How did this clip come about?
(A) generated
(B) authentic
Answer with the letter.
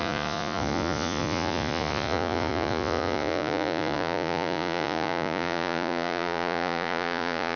A